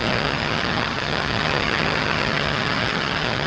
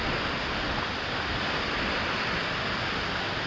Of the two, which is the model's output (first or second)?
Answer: first